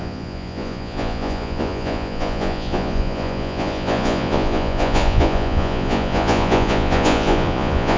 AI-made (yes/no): yes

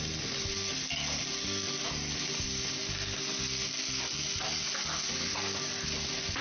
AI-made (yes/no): no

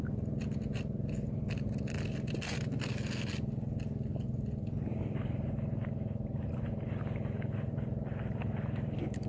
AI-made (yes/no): no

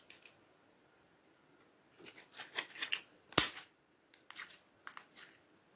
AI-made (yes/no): no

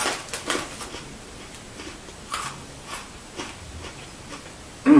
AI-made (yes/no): no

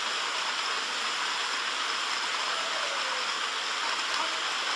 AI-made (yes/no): no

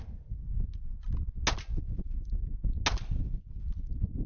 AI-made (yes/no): no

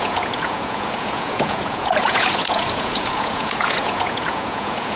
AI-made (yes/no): yes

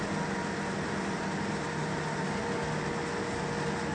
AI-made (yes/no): no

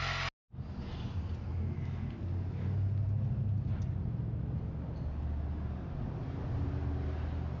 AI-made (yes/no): no